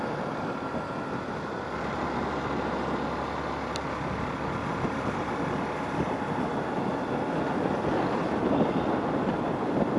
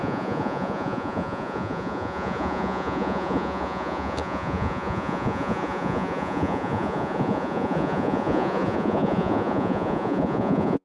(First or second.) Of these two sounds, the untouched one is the first